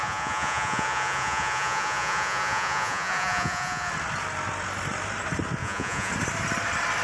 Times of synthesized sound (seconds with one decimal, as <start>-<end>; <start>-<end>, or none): 0.0-3.9; 5.6-6.1